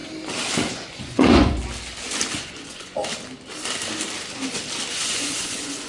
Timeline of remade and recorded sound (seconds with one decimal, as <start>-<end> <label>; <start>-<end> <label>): 0.0-0.7 recorded; 0.7-1.6 remade; 1.6-2.3 recorded; 2.3-3.0 remade; 3.0-4.9 recorded; 4.9-5.9 remade